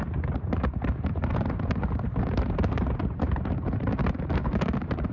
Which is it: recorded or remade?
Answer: remade